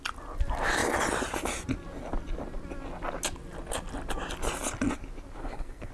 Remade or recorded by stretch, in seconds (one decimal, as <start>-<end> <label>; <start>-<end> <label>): 0.0-5.4 recorded; 5.4-5.9 remade